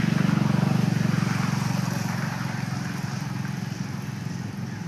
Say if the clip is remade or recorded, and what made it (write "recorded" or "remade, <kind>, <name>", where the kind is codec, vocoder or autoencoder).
recorded